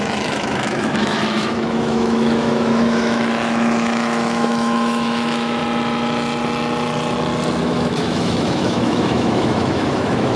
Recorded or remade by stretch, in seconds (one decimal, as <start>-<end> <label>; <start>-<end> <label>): 0.0-5.6 remade; 5.6-7.6 recorded; 7.6-10.4 remade